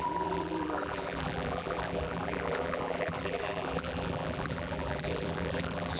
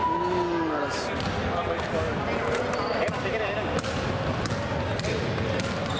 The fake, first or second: first